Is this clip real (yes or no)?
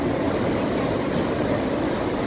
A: yes